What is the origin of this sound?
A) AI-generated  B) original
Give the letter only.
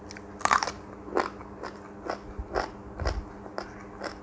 B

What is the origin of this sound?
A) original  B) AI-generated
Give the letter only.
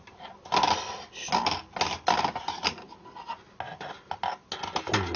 A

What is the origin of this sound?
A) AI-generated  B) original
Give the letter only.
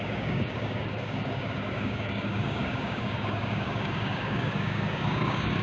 A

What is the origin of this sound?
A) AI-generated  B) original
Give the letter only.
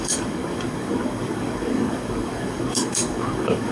A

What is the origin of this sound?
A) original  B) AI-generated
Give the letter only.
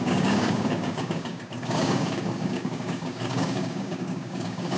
B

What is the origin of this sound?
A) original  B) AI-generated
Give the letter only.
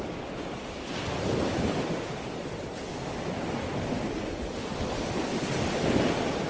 A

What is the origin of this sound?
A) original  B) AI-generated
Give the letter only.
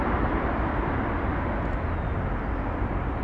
A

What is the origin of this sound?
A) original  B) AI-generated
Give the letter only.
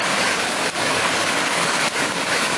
B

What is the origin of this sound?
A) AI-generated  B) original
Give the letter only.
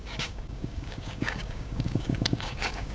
A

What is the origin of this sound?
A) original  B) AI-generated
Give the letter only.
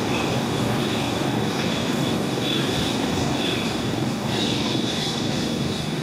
B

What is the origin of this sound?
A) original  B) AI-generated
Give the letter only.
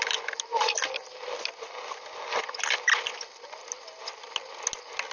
A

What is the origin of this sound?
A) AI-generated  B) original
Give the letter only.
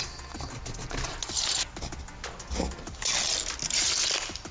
B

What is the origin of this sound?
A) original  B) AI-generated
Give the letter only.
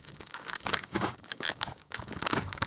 B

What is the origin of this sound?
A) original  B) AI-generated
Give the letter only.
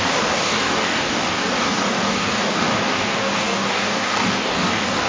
B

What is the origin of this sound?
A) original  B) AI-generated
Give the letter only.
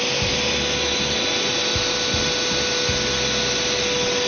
A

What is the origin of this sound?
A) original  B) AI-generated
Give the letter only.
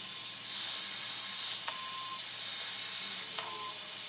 A